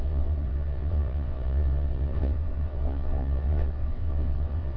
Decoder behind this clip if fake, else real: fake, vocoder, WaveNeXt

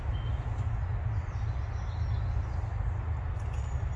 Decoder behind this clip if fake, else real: real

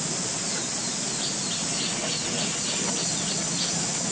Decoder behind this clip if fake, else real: real